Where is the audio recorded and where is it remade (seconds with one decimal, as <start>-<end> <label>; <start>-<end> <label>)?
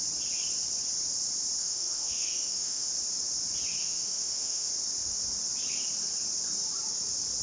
0.0-1.6 recorded; 1.6-2.9 remade; 2.9-3.8 recorded; 3.8-4.7 remade; 4.7-7.4 recorded